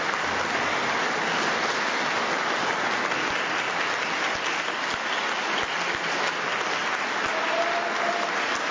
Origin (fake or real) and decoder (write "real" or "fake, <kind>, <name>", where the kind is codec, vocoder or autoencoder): real